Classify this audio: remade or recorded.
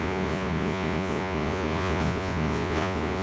remade